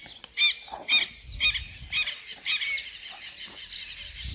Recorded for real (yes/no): yes